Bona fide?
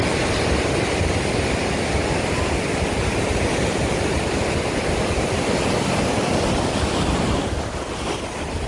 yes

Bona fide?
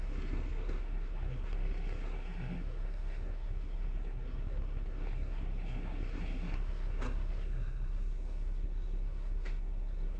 no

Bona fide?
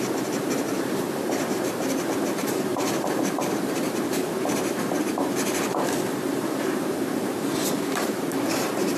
no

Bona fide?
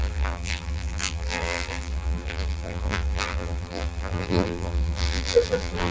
no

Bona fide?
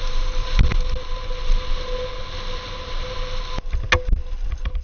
yes